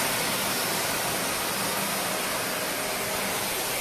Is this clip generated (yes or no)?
no